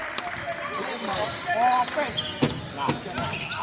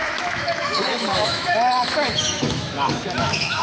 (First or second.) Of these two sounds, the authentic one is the first